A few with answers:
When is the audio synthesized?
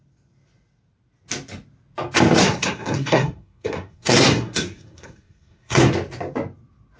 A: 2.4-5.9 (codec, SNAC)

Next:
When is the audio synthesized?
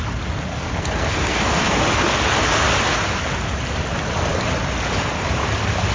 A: 0.5-1.8 (codec, SNAC)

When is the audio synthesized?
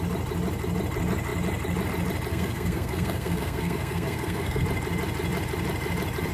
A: 2.3-4.6 (codec, SNAC)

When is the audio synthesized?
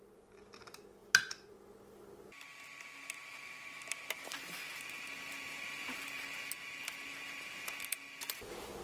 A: none